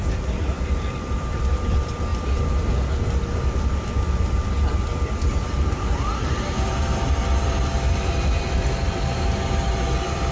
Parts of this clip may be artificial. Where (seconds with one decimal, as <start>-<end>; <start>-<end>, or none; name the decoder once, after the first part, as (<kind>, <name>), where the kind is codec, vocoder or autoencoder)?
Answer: 0.0-10.3 (vocoder, BigVGAN v2)